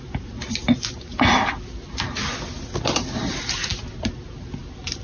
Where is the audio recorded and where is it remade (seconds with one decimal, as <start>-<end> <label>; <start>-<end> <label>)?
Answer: 0.0-5.0 recorded